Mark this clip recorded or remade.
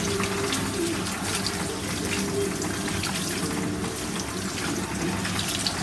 recorded